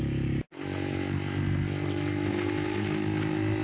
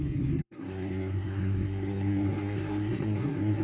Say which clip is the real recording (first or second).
first